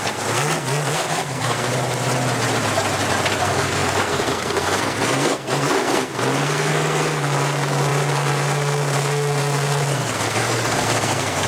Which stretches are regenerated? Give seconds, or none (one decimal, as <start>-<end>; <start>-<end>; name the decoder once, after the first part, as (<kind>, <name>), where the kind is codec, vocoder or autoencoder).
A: 0.0-1.7 (codec, SNAC); 3.4-11.5

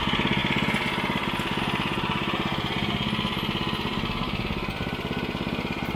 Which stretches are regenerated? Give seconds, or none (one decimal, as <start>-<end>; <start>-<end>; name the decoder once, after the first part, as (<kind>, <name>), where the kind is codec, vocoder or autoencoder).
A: none